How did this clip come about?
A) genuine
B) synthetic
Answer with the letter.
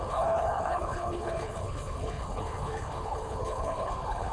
B